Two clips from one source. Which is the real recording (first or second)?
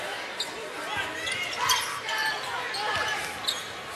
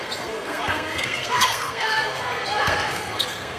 first